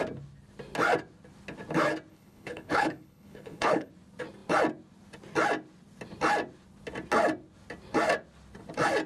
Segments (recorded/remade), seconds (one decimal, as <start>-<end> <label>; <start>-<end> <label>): 0.0-2.1 recorded; 2.1-3.9 remade; 3.9-9.1 recorded